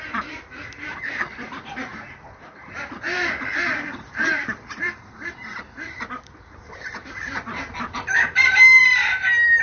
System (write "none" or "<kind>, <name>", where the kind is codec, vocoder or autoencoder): vocoder, BigVGAN v2